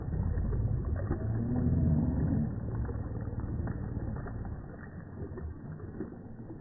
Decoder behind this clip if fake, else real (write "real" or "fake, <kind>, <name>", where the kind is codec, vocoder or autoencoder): real